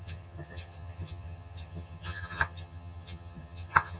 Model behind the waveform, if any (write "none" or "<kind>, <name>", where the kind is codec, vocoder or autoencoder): vocoder, HiFi-GAN